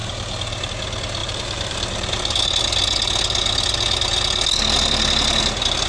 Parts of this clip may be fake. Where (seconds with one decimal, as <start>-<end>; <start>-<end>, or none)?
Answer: 0.0-0.7; 1.2-2.5